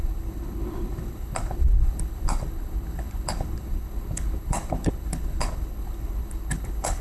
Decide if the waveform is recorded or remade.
remade